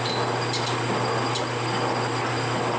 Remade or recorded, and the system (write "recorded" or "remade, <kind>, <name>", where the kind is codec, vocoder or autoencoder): recorded